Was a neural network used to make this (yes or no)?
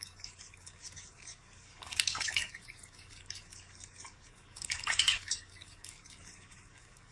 yes